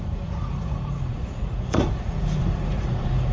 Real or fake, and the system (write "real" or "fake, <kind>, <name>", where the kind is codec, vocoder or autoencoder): fake, vocoder, Vocos